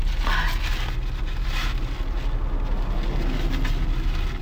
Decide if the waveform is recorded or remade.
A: recorded